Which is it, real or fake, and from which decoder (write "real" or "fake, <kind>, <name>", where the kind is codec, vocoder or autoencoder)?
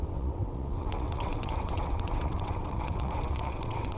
fake, vocoder, WaveNeXt